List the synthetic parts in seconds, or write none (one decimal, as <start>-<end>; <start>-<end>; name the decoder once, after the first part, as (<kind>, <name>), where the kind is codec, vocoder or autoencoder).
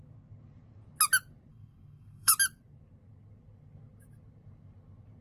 1.5-2.3 (codec, SNAC)